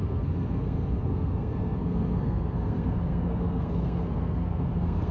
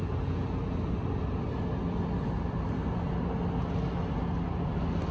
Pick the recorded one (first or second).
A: second